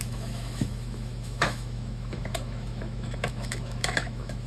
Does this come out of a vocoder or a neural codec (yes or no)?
yes